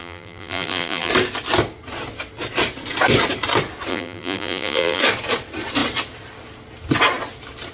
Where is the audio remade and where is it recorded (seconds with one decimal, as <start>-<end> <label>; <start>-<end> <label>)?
0.0-1.1 remade; 1.1-3.9 recorded; 3.9-5.0 remade; 5.0-7.7 recorded